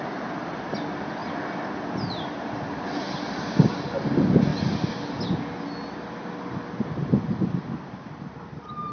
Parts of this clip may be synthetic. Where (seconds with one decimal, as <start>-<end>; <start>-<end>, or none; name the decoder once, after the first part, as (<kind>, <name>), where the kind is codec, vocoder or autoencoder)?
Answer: none